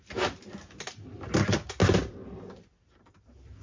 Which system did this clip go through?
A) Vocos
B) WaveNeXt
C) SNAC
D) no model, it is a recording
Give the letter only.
D